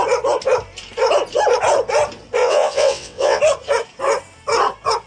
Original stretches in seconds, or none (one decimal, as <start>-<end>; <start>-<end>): 0.0-2.4; 3.4-5.1